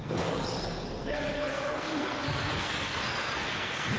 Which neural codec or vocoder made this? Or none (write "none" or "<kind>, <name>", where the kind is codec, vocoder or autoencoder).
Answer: codec, SNAC